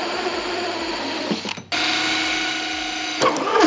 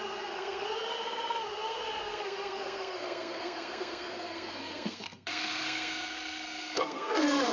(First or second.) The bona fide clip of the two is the first